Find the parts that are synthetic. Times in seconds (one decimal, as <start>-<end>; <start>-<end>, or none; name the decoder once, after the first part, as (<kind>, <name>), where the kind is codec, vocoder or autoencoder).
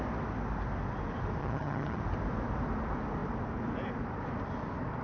1.4-2.0 (vocoder, HiFi-GAN)